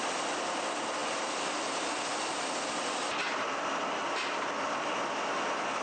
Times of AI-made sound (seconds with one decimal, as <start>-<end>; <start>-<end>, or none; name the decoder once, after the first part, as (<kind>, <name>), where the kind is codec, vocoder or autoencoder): none